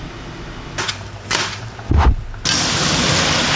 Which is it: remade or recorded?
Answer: recorded